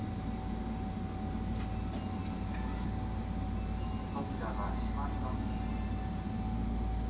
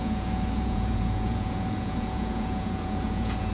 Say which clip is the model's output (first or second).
second